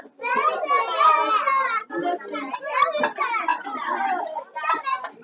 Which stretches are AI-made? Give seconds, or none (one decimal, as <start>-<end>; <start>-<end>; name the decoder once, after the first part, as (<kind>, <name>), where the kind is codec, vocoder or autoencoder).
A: none